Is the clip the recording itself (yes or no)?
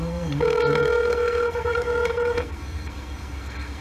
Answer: no